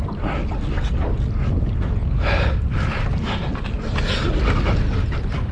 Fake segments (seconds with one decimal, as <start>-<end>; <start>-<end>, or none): none